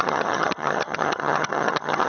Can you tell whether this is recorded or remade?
remade